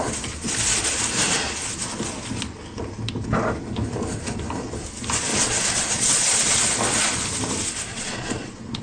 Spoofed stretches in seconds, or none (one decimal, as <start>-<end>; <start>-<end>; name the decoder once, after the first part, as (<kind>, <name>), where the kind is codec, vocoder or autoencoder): 5.3-6.6 (vocoder, Vocos); 7.9-8.8